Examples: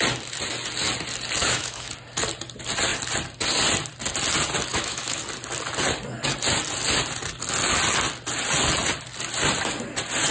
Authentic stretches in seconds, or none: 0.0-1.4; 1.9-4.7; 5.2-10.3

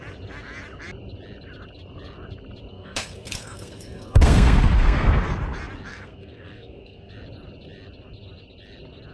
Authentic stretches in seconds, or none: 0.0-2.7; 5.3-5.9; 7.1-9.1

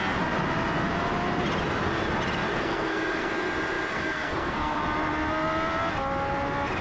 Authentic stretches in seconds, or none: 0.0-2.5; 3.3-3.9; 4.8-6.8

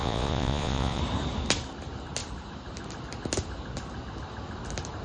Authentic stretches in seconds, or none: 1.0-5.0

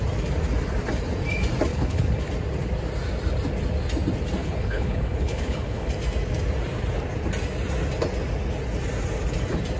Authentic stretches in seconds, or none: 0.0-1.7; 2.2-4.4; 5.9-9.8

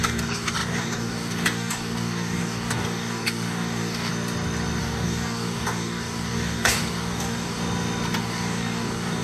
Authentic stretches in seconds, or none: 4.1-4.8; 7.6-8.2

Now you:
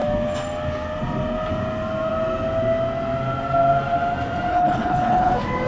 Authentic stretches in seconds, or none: 0.0-4.5; 5.3-5.7

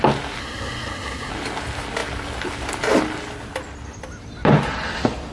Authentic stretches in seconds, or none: 0.0-0.4; 1.3-5.3